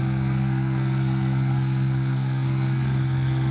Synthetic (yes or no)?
yes